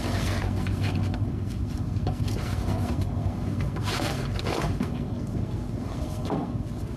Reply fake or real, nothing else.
fake